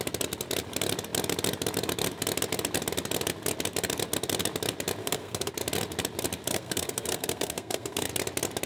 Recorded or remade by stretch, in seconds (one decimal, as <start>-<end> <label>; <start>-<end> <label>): 0.0-5.0 recorded; 5.0-5.5 remade; 5.5-6.5 recorded; 6.5-8.1 remade; 8.1-8.7 recorded